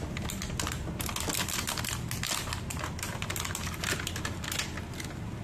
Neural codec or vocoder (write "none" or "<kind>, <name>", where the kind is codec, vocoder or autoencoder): none